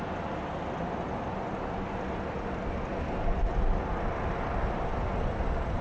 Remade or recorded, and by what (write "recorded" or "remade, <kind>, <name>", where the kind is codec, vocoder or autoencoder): recorded